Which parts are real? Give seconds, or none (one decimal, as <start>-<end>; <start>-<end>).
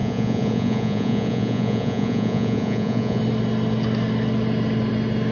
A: 3.2-5.3